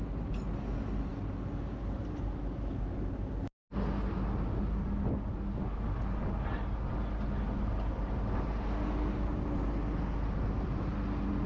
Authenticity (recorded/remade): recorded